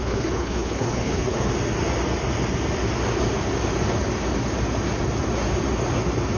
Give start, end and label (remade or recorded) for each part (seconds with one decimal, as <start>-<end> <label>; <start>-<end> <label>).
0.0-1.5 remade; 1.5-6.4 recorded